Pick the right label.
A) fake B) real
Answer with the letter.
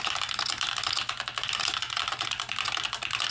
B